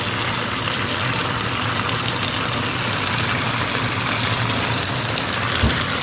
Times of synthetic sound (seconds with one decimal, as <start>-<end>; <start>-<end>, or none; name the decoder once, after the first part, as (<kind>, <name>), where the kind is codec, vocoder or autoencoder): none